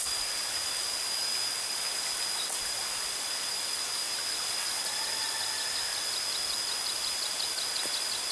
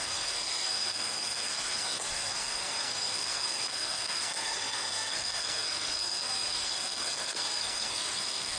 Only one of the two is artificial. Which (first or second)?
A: second